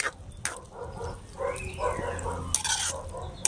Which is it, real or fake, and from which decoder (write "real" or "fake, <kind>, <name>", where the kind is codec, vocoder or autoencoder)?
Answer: real